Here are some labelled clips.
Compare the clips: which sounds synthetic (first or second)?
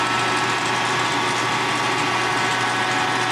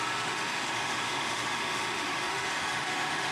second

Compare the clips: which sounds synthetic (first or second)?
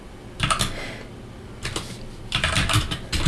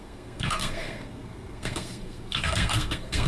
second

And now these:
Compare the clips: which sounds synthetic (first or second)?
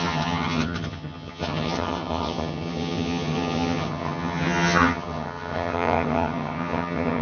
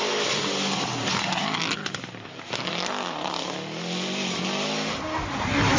first